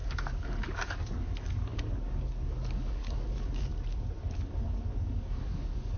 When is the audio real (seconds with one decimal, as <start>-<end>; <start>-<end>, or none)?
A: 3.7-4.2